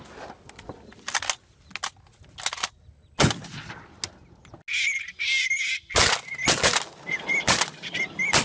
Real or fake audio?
real